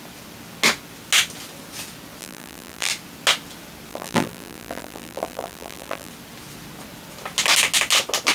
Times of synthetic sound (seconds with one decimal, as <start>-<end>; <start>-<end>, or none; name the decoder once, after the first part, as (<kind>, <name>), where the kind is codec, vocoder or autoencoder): 2.2-2.9 (vocoder, BigVGAN v2); 3.9-6.1